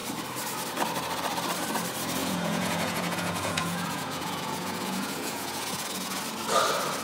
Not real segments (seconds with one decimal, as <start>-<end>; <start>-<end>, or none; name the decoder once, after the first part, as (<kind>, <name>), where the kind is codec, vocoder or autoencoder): 2.2-6.2 (vocoder, Vocos)